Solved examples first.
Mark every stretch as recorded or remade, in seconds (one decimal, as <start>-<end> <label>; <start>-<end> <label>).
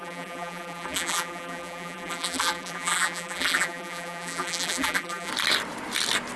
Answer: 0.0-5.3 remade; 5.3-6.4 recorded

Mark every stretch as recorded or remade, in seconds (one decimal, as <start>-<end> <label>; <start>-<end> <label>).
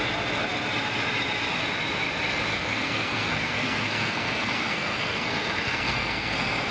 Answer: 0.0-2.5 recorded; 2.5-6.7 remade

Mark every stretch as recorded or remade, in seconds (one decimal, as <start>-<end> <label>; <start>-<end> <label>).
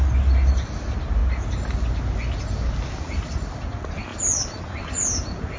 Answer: 0.0-5.6 recorded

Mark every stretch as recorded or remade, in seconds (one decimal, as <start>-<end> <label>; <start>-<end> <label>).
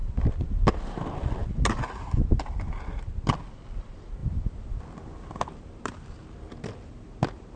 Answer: 0.0-7.6 recorded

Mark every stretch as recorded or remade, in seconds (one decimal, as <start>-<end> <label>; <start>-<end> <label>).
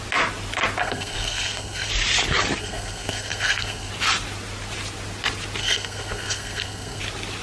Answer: 0.0-0.8 recorded; 0.8-1.9 remade; 1.9-2.6 recorded; 2.6-3.9 remade; 3.9-5.6 recorded; 5.6-7.0 remade; 7.0-7.4 recorded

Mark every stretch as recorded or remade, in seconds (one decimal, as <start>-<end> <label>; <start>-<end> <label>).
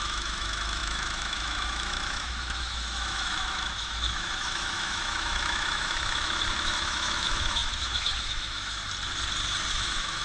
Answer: 0.0-8.8 remade; 8.8-9.7 recorded; 9.7-10.2 remade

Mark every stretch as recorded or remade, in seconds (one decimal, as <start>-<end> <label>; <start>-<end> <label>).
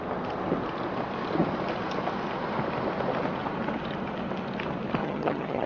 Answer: 0.0-5.0 recorded; 5.0-5.7 remade